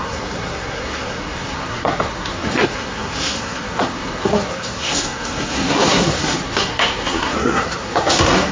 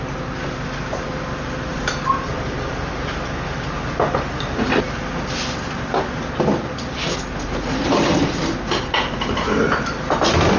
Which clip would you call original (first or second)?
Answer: second